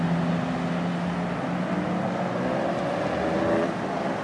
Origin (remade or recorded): recorded